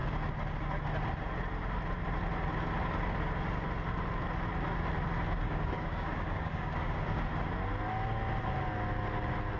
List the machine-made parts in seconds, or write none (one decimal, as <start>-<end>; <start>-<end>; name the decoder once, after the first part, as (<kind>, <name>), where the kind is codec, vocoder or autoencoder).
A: 5.4-7.2 (codec, DAC)